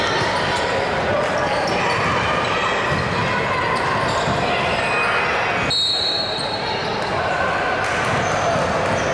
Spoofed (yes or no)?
no